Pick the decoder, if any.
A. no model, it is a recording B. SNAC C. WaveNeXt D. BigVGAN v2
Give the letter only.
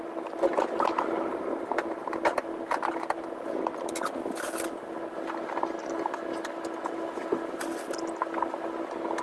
A